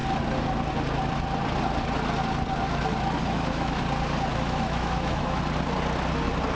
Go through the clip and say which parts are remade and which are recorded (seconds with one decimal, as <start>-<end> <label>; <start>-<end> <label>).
0.0-3.2 recorded; 3.2-3.8 remade; 3.8-4.3 recorded; 4.3-5.4 remade; 5.4-6.6 recorded